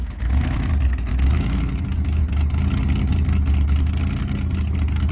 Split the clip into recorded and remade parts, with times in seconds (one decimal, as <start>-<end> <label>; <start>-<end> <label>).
0.0-0.7 remade; 0.7-1.1 recorded; 1.1-1.8 remade; 1.8-5.1 recorded